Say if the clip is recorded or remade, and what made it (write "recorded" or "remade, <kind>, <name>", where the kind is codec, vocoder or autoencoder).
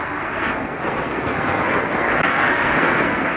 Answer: remade, codec, SNAC